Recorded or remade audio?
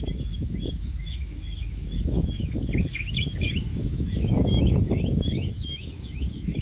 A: remade